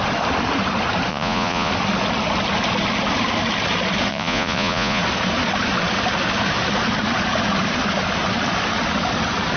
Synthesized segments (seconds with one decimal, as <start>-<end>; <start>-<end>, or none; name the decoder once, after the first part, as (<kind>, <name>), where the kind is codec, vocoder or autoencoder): 1.1-1.7 (vocoder, Vocos); 4.1-5.0